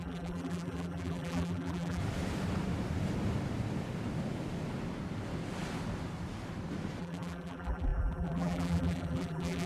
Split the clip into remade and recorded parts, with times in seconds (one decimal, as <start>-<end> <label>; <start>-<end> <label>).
0.0-2.0 remade; 2.0-7.0 recorded; 7.0-9.7 remade